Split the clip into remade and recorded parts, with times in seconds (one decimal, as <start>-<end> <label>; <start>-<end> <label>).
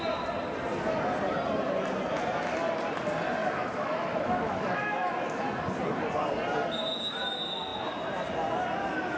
0.0-3.4 recorded; 3.4-5.4 remade; 5.4-9.2 recorded